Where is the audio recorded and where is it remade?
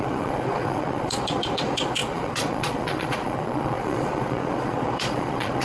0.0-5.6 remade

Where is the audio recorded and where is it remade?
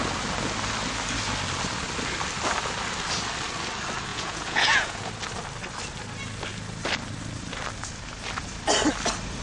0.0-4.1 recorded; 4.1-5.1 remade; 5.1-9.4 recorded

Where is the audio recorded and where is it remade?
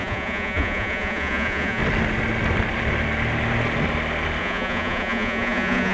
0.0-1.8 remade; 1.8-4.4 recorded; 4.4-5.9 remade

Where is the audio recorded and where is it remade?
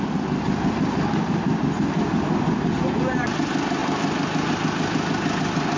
0.0-5.8 recorded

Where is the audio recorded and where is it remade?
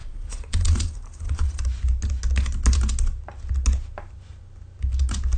0.0-1.6 remade; 1.6-5.4 recorded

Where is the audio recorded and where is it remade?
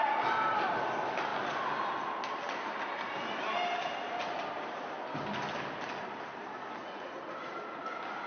0.0-6.8 recorded; 6.8-7.5 remade; 7.5-8.3 recorded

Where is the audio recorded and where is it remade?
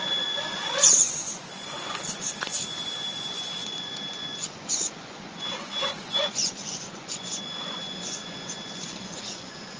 0.0-9.8 remade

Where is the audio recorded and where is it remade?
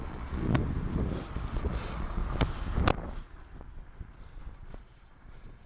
0.0-0.6 remade; 0.6-1.5 recorded; 1.5-2.2 remade; 2.2-4.5 recorded; 4.5-5.7 remade